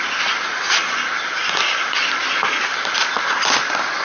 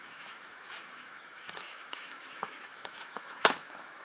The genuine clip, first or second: first